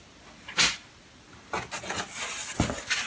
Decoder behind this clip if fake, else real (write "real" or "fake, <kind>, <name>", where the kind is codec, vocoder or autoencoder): real